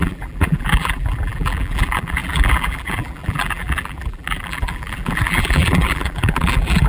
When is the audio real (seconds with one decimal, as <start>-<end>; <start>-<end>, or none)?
none